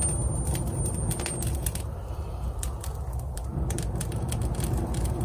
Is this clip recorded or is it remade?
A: recorded